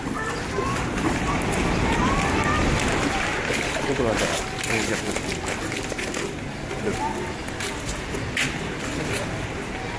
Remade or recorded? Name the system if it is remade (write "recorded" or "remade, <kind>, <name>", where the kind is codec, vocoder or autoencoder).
recorded